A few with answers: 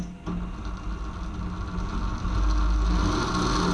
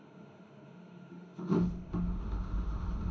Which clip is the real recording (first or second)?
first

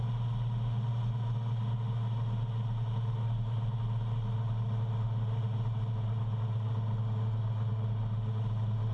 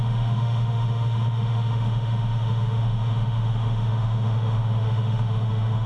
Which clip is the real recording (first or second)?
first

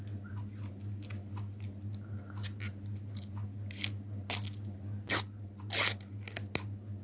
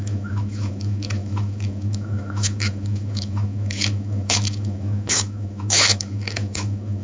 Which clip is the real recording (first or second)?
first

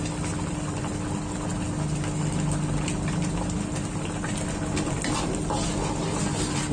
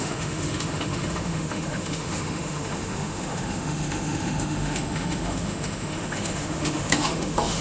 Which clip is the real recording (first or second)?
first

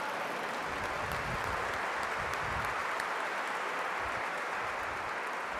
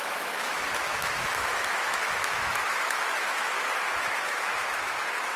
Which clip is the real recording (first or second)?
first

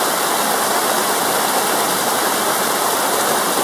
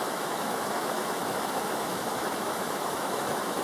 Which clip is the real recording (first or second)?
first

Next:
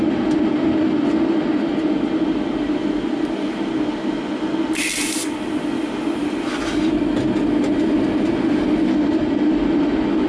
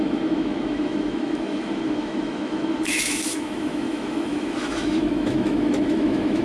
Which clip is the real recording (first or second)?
first